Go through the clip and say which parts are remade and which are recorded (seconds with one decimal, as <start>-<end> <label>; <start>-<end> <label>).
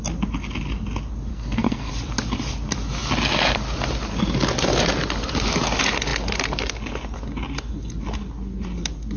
0.0-1.3 recorded; 1.3-1.9 remade; 1.9-9.2 recorded